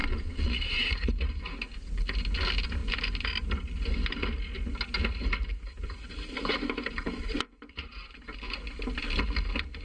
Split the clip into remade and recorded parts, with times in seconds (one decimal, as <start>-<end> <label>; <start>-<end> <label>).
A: 0.0-0.9 remade; 0.9-9.8 recorded